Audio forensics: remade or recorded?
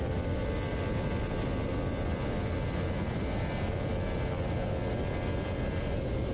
recorded